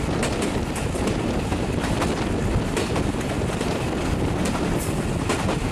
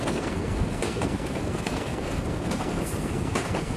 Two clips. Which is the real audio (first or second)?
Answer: first